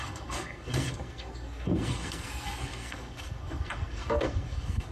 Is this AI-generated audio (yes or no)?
yes